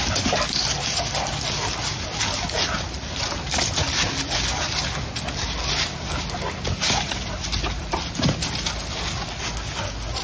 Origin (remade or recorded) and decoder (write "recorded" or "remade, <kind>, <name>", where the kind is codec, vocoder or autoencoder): recorded